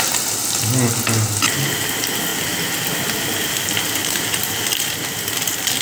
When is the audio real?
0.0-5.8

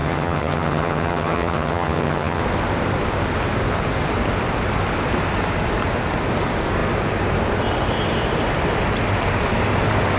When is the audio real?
2.4-10.2

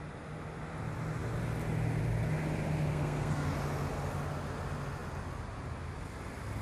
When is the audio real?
0.0-2.9; 3.5-6.6

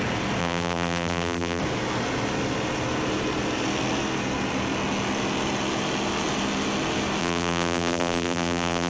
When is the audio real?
0.0-0.4; 1.6-7.2

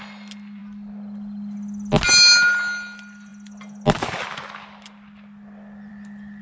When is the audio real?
0.0-6.4

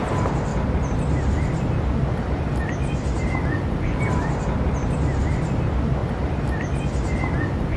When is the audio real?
0.0-7.8

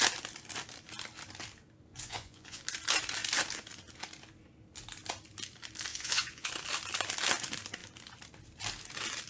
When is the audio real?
0.0-1.9; 2.6-5.9; 6.5-9.3

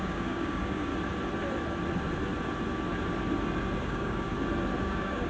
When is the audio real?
0.9-3.8; 4.3-4.8